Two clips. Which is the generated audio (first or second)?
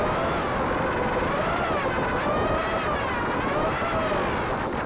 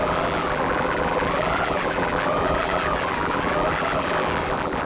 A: second